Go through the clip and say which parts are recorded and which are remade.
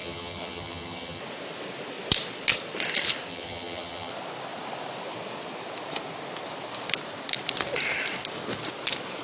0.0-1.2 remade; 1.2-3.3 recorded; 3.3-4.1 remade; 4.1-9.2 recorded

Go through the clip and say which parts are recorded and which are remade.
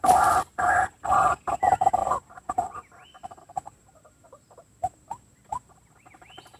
0.0-6.6 recorded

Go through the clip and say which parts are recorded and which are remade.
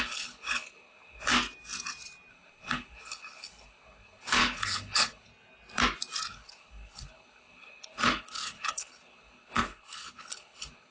0.0-1.3 remade; 1.3-2.3 recorded; 2.3-5.3 remade; 5.3-6.3 recorded; 6.3-10.9 remade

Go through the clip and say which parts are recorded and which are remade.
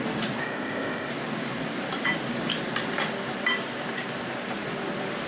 0.0-0.4 recorded; 0.4-1.1 remade; 1.1-5.3 recorded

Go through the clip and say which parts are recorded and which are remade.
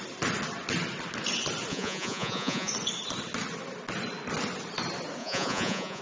0.0-1.7 recorded; 1.7-2.7 remade; 2.7-5.2 recorded; 5.2-6.0 remade